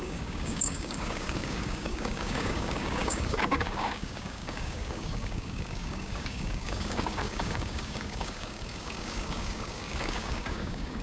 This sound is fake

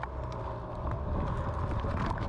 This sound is real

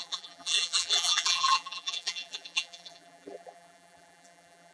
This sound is fake